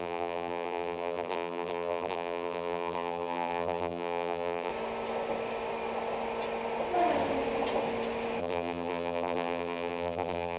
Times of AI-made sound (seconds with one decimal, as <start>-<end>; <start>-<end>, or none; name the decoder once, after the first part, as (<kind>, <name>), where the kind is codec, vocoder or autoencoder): 0.0-4.7 (vocoder, BigVGAN v2); 8.4-10.6